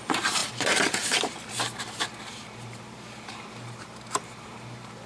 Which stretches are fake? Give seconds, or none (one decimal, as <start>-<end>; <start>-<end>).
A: 0.0-5.1